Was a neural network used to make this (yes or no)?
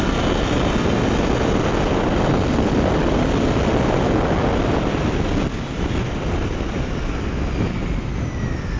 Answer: no